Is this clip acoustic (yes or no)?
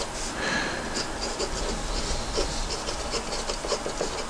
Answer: yes